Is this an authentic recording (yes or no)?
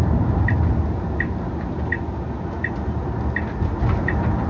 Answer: yes